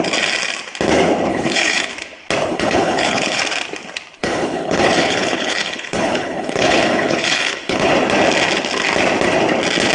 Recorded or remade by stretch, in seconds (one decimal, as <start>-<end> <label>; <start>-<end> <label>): 0.0-1.3 recorded; 1.3-1.9 remade; 1.9-2.5 recorded; 2.5-3.4 remade; 3.4-4.2 recorded; 4.2-7.9 remade; 7.9-9.9 recorded